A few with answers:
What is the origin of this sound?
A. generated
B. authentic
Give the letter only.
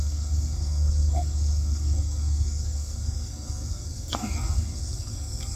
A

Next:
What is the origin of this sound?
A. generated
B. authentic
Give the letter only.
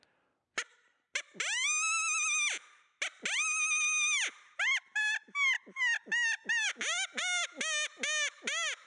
B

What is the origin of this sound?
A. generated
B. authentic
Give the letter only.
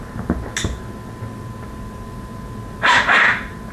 B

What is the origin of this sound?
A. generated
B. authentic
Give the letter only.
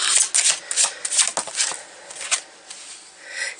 B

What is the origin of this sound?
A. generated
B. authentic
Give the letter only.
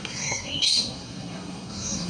A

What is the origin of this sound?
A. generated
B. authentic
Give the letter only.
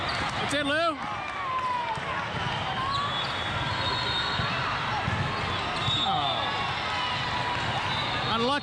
B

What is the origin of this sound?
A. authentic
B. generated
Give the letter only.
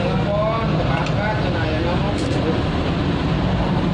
A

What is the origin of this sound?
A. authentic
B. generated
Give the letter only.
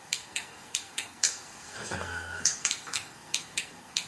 B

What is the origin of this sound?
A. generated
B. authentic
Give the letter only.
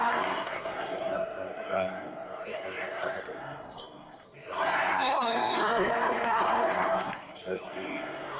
A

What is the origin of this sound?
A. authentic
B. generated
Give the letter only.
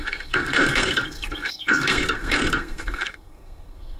B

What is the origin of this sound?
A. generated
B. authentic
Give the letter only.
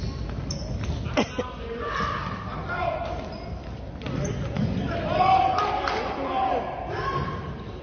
B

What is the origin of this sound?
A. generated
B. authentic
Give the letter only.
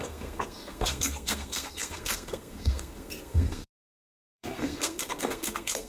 A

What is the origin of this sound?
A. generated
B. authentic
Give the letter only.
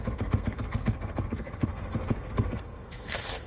A